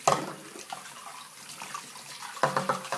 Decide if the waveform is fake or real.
real